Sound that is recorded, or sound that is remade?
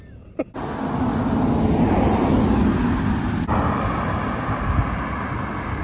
recorded